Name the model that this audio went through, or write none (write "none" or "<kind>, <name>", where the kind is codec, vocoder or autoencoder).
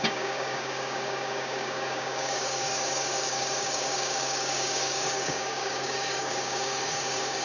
codec, DAC